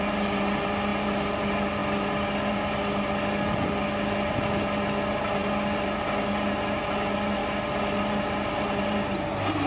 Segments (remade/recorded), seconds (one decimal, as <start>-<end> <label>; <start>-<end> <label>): 0.0-9.7 recorded